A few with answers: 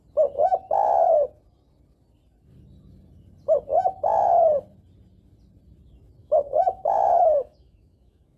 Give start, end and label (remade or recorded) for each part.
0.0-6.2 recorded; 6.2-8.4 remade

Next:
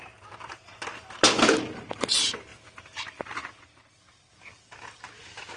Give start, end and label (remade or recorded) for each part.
0.0-5.6 recorded

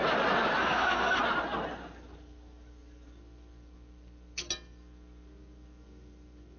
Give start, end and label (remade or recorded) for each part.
0.0-0.6 recorded; 0.6-1.2 remade; 1.2-6.6 recorded

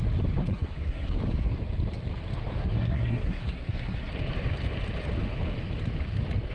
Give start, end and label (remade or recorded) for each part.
0.0-0.4 recorded; 0.4-1.2 remade; 1.2-2.6 recorded; 2.6-4.1 remade; 4.1-6.5 recorded

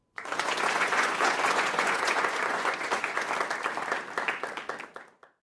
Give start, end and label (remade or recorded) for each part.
0.0-3.3 remade; 3.3-5.5 recorded

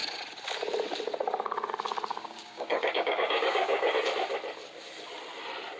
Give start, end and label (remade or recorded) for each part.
0.0-2.2 recorded; 2.2-3.9 remade; 3.9-5.8 recorded

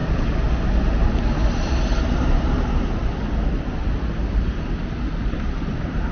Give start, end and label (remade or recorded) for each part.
0.0-6.1 recorded

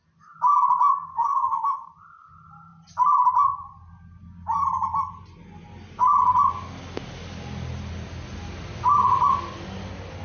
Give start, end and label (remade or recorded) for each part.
0.0-1.1 recorded; 1.1-1.9 remade; 1.9-10.2 recorded